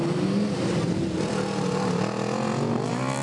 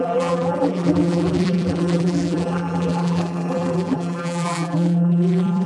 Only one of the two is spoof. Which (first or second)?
second